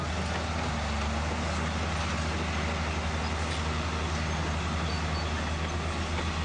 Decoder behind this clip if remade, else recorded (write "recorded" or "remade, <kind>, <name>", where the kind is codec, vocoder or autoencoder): recorded